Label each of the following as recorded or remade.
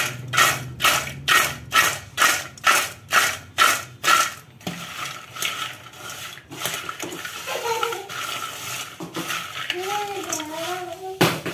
recorded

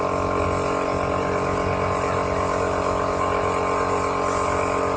recorded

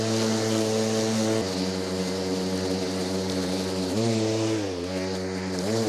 recorded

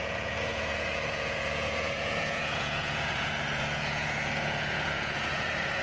remade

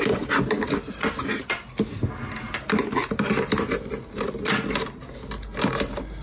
recorded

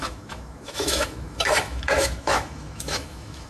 remade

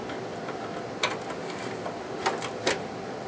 recorded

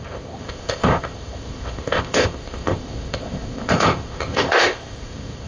remade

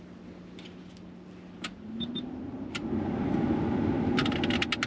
recorded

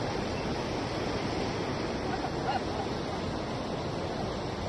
recorded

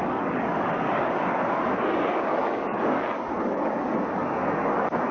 remade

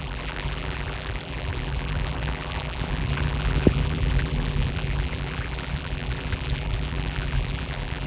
remade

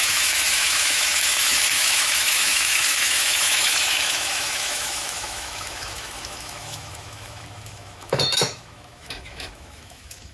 remade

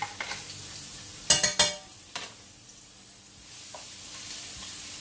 recorded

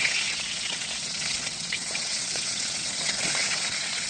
remade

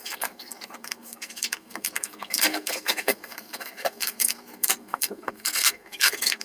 remade